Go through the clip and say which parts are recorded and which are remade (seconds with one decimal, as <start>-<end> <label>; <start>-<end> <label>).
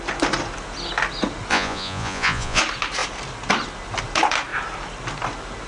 0.0-1.5 recorded; 1.5-2.6 remade; 2.6-5.7 recorded